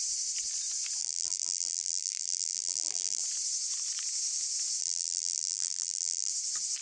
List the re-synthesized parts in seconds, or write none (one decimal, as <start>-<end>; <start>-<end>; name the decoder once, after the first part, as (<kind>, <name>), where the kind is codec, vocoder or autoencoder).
1.0-3.2 (vocoder, BigVGAN v2); 4.8-6.3